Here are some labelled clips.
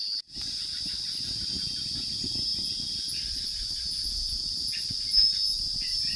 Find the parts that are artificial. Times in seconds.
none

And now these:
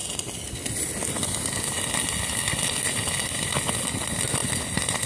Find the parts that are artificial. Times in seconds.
none

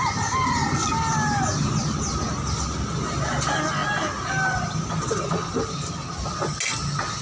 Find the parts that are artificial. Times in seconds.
none

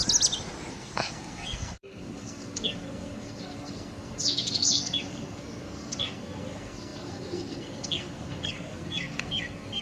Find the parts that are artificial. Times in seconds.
0.7-9.8 (codec, SNAC)